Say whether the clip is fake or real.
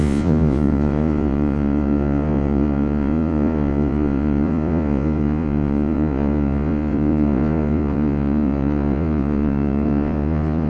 fake